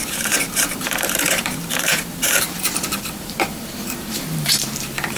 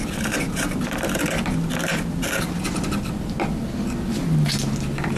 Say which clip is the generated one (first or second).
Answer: first